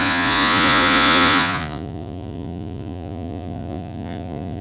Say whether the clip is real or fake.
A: fake